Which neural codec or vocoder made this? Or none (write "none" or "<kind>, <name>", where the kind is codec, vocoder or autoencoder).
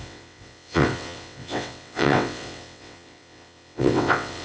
vocoder, WaveNeXt